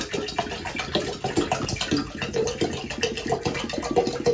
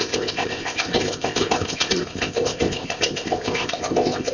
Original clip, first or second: first